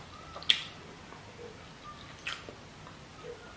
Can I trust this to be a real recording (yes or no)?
yes